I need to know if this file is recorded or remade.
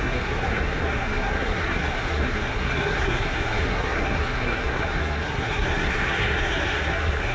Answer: remade